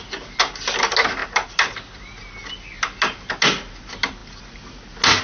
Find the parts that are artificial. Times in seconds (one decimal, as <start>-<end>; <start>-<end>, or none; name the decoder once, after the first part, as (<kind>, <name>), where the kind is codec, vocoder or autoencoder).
none